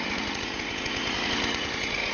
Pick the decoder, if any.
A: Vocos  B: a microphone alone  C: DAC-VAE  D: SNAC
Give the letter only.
A